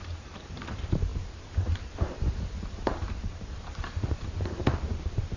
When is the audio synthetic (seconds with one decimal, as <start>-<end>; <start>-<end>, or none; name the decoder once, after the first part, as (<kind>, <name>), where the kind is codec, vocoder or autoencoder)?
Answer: 0.0-5.4 (vocoder, BigVGAN v2)